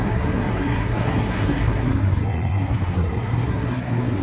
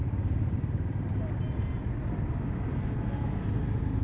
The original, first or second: second